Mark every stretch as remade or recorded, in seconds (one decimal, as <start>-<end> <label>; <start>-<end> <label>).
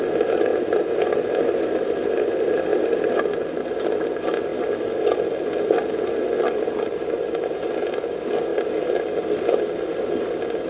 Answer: 0.0-10.7 recorded